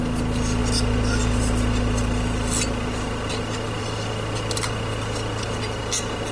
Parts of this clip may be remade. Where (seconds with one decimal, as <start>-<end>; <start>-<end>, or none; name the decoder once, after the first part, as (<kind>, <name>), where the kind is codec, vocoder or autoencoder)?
none